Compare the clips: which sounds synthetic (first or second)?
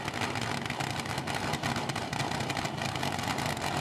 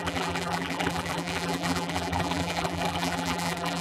second